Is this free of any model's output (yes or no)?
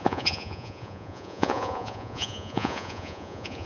no